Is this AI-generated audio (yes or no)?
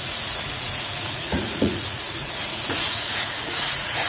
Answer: yes